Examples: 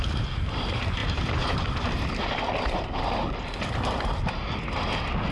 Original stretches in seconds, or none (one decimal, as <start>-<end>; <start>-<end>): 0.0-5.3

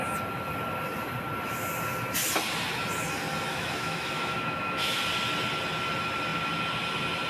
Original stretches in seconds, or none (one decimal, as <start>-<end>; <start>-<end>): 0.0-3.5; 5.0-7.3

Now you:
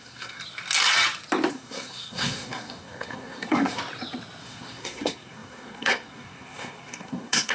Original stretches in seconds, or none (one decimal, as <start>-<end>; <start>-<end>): 0.4-1.5; 3.8-4.4